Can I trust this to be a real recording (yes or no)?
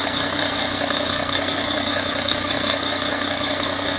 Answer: no